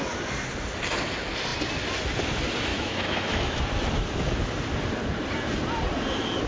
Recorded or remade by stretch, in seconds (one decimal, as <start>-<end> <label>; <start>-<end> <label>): 0.0-2.7 recorded; 2.7-3.6 remade; 3.6-6.5 recorded